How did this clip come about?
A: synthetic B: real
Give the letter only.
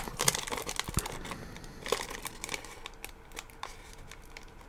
B